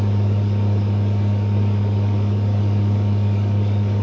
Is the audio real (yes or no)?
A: no